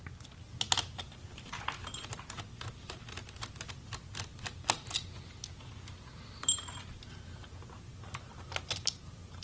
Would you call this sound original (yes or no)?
yes